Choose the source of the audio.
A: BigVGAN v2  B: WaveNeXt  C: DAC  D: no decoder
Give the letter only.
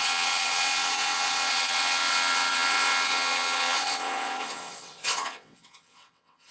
B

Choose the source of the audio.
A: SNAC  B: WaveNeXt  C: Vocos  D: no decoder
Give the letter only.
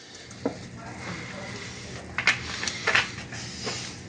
D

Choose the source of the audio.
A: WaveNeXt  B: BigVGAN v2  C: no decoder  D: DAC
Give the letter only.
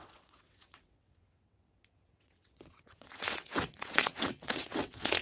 A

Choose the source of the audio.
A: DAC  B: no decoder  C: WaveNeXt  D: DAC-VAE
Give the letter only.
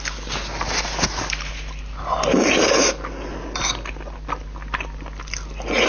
B